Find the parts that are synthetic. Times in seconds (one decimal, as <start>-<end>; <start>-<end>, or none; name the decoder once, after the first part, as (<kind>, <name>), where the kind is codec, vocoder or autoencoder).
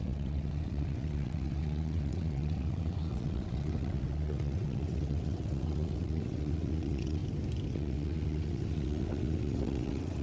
0.0-7.2 (vocoder, WaveNeXt); 7.7-10.2